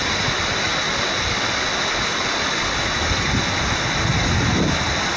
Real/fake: real